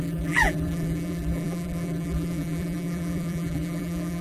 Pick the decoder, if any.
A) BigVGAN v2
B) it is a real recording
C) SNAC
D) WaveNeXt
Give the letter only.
A